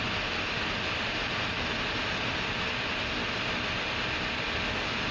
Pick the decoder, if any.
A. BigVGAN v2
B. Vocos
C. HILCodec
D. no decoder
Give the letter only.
D